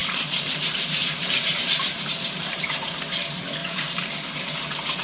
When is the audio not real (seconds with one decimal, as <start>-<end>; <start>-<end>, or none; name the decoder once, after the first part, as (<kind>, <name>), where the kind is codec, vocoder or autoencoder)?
0.0-3.0 (vocoder, BigVGAN v2); 3.6-4.5